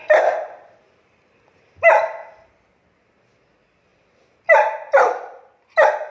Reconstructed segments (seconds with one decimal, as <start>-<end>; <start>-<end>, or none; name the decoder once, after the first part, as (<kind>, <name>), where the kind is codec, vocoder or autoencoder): 0.0-1.6 (vocoder, BigVGAN v2)